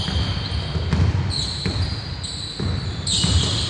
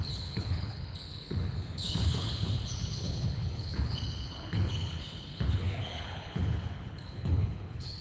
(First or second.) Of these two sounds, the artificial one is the second